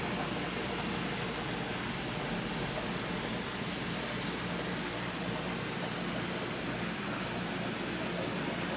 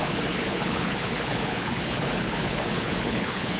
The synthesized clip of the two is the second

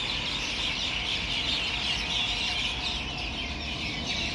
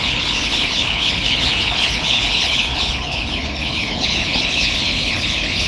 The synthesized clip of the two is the second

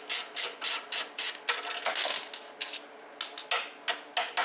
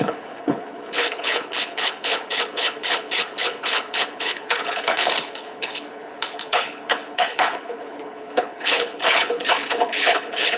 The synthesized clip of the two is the second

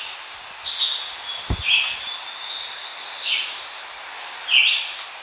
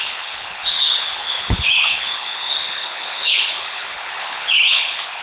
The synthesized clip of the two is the second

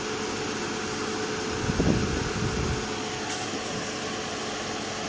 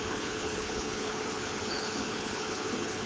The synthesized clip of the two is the second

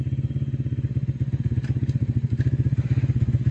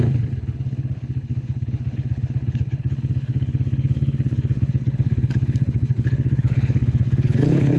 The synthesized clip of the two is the second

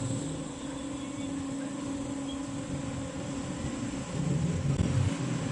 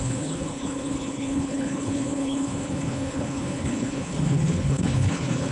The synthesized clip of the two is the second